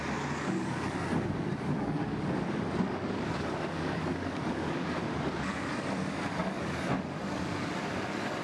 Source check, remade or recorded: remade